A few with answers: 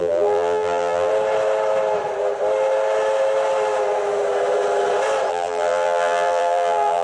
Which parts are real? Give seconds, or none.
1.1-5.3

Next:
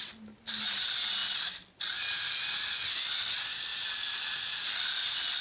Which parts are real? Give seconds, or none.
0.0-5.4

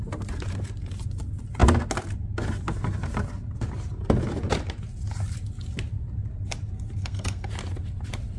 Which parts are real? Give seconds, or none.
0.0-7.0; 7.5-8.4

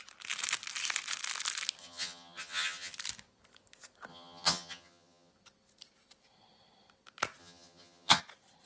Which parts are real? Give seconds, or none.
0.0-1.8; 2.9-4.1; 5.3-7.4; 8.2-8.7